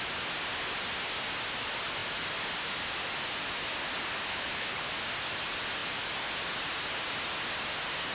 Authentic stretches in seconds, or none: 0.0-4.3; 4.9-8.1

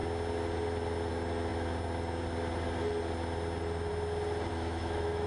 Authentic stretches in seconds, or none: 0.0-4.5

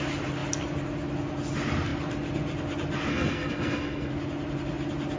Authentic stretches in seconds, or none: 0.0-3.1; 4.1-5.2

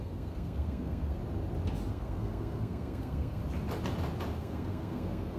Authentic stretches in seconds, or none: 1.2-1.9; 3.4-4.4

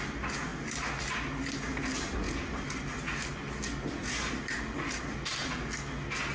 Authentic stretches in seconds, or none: 0.0-6.3

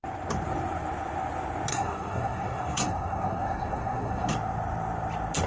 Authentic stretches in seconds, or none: 0.0-1.7; 4.3-5.5